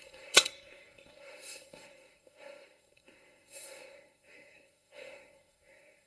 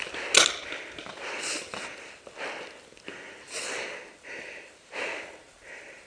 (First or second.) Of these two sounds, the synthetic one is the first